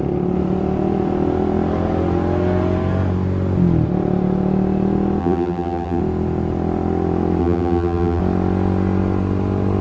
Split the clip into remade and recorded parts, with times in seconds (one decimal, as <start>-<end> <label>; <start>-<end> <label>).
0.0-5.2 recorded; 5.2-6.0 remade; 6.0-7.4 recorded; 7.4-8.2 remade; 8.2-9.8 recorded